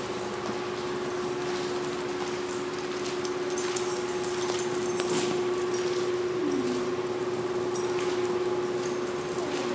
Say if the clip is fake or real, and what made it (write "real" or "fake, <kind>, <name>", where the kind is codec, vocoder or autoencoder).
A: real